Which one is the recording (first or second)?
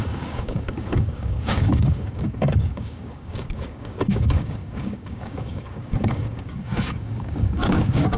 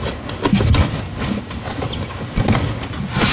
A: second